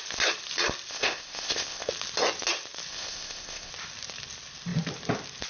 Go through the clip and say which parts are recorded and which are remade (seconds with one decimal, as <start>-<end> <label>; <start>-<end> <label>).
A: 0.0-0.9 recorded; 0.9-1.9 remade; 1.9-2.9 recorded; 2.9-3.7 remade; 3.7-5.5 recorded